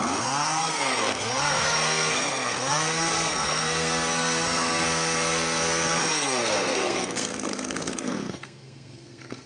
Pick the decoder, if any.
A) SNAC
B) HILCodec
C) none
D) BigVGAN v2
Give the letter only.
A